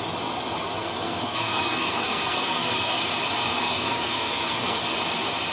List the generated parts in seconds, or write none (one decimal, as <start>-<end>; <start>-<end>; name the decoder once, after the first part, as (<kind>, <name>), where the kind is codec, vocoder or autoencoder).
0.8-3.0 (codec, SNAC); 3.4-4.8